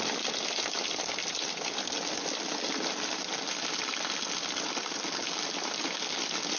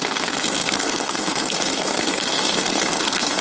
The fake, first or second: second